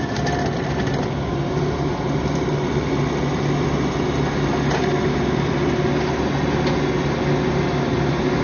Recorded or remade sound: recorded